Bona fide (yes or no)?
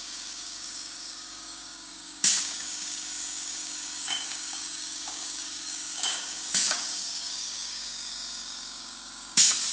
no